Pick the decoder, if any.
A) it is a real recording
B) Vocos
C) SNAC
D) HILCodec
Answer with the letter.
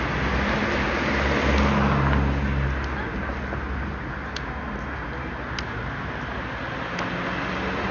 A